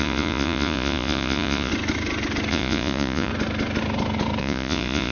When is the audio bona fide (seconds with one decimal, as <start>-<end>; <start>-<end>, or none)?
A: 1.7-2.5; 3.3-4.4